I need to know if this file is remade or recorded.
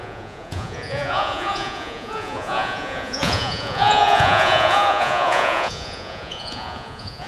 remade